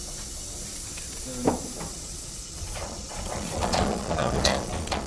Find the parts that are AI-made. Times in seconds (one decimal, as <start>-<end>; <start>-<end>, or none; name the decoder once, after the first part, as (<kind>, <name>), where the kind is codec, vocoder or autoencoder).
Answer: 1.9-5.1 (vocoder, Vocos)